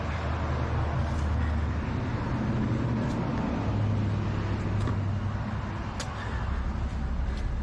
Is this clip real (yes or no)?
yes